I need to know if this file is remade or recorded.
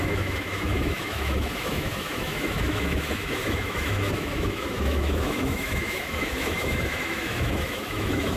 remade